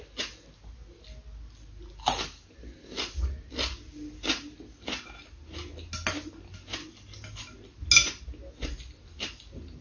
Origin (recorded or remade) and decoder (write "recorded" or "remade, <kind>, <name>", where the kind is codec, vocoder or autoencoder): recorded